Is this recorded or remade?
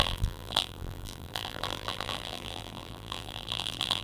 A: remade